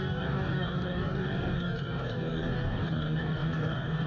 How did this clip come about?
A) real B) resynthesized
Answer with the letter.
B